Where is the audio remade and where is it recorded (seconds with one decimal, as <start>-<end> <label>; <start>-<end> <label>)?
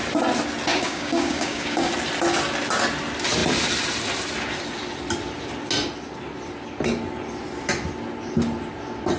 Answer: 0.0-0.7 recorded; 0.7-1.9 remade; 1.9-9.2 recorded